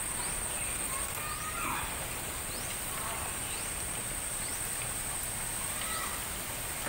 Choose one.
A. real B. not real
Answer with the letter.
A